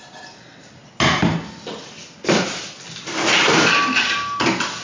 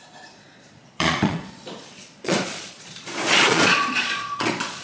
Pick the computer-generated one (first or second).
second